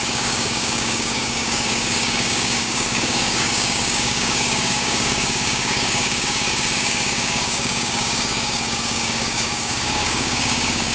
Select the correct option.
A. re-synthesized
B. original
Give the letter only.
A